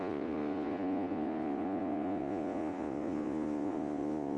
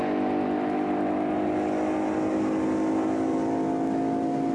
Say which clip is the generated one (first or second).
first